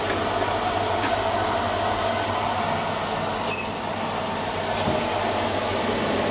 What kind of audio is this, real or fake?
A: real